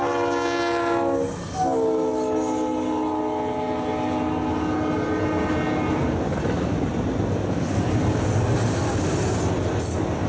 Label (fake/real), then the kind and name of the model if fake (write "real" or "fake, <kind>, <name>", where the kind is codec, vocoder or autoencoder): real